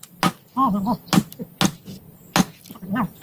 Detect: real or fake real